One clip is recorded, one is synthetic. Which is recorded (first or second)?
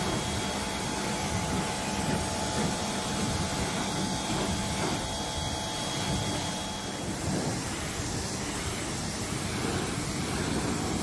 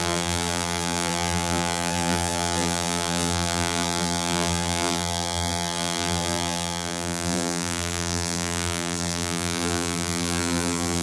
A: first